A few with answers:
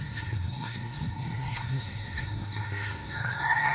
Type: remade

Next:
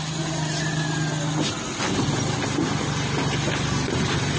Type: recorded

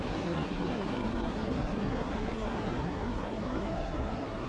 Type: remade